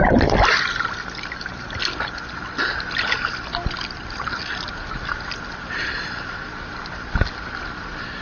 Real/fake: real